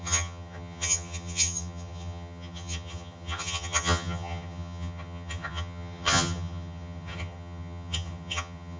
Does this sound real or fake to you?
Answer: fake